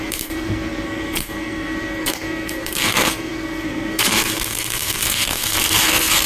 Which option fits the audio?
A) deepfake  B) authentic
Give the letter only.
A